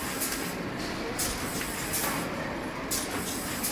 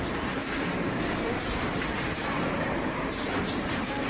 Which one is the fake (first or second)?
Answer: second